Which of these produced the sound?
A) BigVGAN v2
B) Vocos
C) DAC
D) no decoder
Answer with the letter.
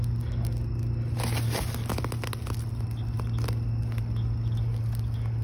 D